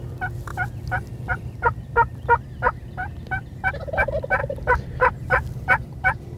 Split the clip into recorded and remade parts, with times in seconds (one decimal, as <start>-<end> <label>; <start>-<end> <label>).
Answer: 0.0-4.4 recorded; 4.4-5.1 remade; 5.1-6.4 recorded